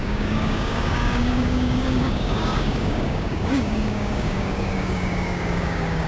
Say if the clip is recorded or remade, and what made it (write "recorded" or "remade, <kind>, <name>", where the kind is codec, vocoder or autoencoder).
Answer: remade, codec, DAC